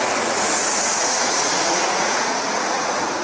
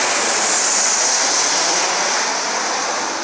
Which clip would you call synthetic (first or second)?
first